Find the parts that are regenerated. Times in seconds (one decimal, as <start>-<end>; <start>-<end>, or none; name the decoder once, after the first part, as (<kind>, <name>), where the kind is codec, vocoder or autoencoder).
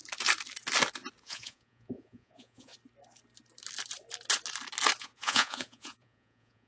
1.2-2.7 (vocoder, Vocos); 5.0-6.7